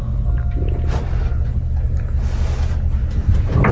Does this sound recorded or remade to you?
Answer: recorded